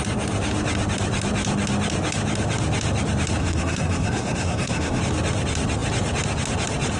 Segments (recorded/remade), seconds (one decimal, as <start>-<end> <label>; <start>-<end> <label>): 0.0-3.4 recorded; 3.4-5.0 remade; 5.0-7.0 recorded